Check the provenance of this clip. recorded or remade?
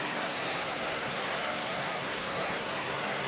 remade